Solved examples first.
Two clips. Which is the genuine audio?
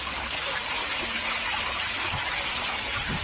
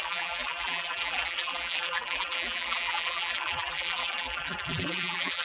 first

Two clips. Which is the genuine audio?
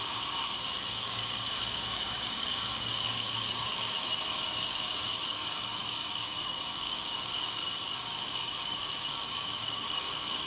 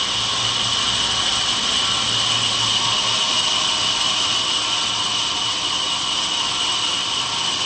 second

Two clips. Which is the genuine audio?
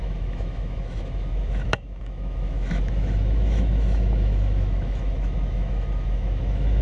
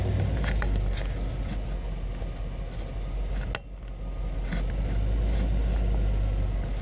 second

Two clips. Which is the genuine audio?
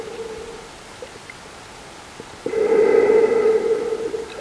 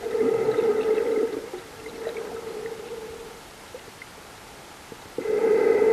first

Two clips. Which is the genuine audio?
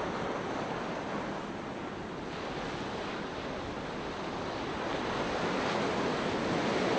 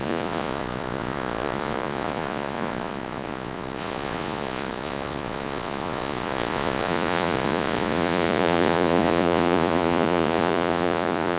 first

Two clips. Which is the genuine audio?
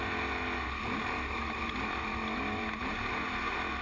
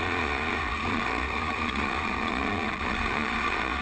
first